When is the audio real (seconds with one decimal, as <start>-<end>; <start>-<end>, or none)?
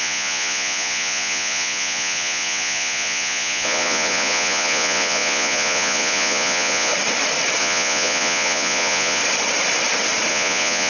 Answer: 6.9-7.6; 9.2-10.3